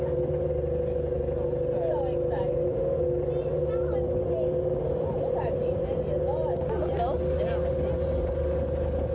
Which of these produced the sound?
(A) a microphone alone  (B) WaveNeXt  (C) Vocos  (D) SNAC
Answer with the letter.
A